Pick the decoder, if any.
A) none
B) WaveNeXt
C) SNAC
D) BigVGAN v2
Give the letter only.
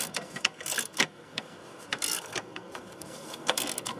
C